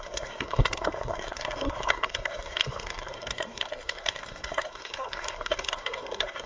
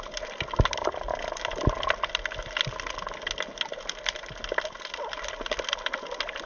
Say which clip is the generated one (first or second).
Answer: first